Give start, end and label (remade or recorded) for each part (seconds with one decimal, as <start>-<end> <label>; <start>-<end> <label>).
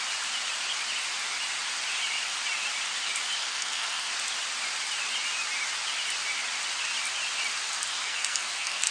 0.0-3.4 recorded; 3.4-4.1 remade; 4.1-7.9 recorded; 7.9-8.9 remade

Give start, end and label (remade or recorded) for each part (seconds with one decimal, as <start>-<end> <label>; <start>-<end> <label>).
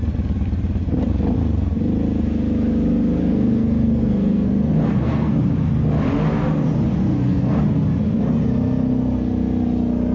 0.0-3.2 recorded; 3.2-5.4 remade; 5.4-7.1 recorded; 7.1-7.6 remade; 7.6-10.1 recorded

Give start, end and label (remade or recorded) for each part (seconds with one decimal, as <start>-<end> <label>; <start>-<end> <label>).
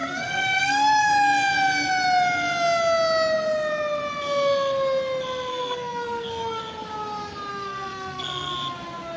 0.0-1.1 remade; 1.1-5.5 recorded; 5.5-6.6 remade; 6.6-7.5 recorded; 7.5-8.5 remade; 8.5-9.2 recorded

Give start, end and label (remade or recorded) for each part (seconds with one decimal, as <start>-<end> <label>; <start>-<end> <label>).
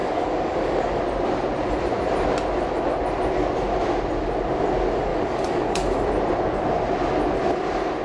0.0-1.0 remade; 1.0-5.1 recorded; 5.1-6.0 remade; 6.0-8.0 recorded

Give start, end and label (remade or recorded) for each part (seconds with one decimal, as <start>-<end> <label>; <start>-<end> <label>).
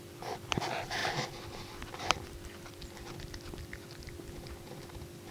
0.0-5.3 recorded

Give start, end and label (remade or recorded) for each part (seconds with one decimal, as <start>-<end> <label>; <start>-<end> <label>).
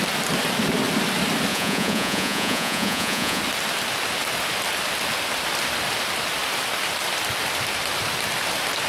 0.0-1.5 recorded; 1.5-3.4 remade; 3.4-8.9 recorded